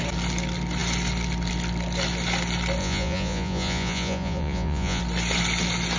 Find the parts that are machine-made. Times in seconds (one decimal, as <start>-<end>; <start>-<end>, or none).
2.8-5.0